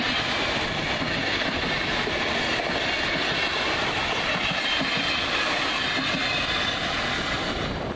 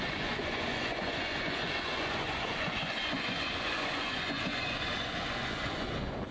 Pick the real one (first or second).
first